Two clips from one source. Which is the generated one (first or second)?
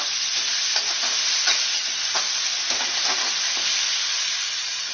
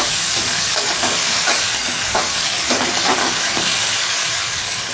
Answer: second